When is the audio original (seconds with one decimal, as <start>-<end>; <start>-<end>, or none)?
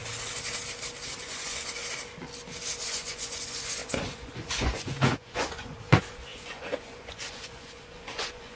0.0-1.2; 1.8-2.8